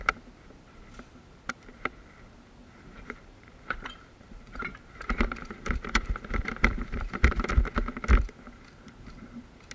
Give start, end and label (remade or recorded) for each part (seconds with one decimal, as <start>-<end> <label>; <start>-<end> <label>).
0.0-2.6 recorded; 2.6-7.5 remade; 7.5-9.7 recorded